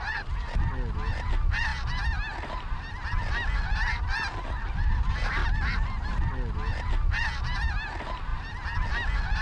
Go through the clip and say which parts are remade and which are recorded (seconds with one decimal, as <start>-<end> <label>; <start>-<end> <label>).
0.0-9.4 recorded

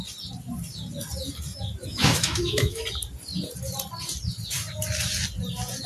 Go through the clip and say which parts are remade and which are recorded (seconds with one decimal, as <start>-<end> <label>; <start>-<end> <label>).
0.0-1.9 recorded; 1.9-2.8 remade; 2.8-5.9 recorded

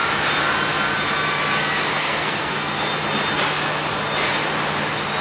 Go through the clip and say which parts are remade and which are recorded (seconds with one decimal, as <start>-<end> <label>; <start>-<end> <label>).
0.0-1.9 recorded; 1.9-2.9 remade; 2.9-5.2 recorded

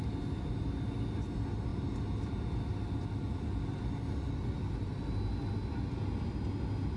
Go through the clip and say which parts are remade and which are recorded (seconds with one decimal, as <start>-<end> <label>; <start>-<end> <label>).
0.0-7.0 recorded

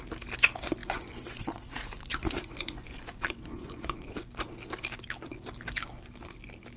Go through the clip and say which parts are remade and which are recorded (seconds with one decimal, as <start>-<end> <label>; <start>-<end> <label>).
0.0-0.8 recorded; 0.8-4.5 remade; 4.5-6.8 recorded

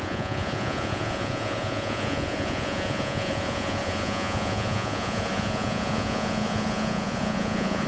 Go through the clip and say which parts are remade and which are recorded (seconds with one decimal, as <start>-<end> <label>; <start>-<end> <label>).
0.0-7.9 remade

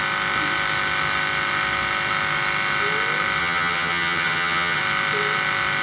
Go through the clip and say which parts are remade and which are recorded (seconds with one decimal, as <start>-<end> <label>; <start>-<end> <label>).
0.0-3.4 recorded; 3.4-4.8 remade; 4.8-5.8 recorded

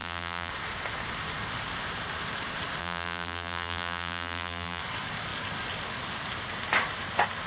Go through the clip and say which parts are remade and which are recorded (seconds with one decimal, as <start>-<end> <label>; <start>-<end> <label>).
0.0-0.5 remade; 0.5-2.8 recorded; 2.8-4.8 remade; 4.8-7.5 recorded